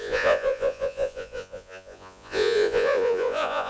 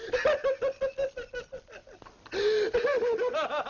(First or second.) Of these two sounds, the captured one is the second